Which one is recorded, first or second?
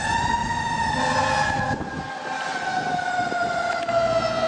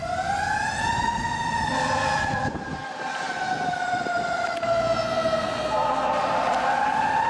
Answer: first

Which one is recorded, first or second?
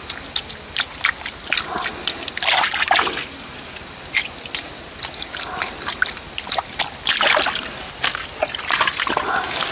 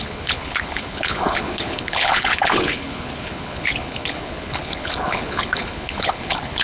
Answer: first